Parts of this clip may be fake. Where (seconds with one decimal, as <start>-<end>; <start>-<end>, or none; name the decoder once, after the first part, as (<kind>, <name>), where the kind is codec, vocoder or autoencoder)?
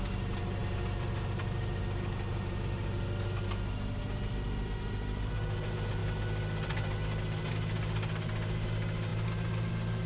none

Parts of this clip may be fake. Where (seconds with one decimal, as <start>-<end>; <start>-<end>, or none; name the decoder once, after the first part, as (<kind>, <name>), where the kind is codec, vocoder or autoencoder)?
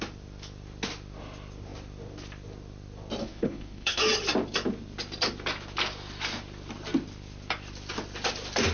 3.2-4.0 (codec, HILCodec)